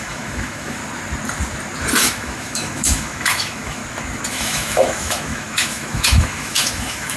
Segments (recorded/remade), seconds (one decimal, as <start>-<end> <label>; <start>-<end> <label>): 0.0-0.8 remade; 0.8-2.0 recorded; 2.0-3.8 remade; 3.8-4.3 recorded; 4.3-7.2 remade